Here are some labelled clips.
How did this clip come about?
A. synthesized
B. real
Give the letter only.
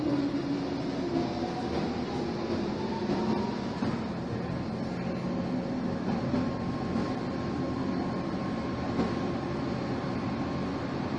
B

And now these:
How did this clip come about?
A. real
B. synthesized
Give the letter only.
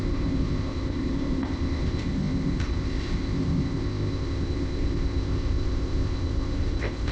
B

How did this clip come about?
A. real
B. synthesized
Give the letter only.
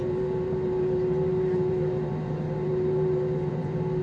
B